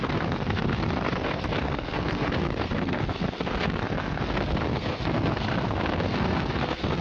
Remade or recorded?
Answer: remade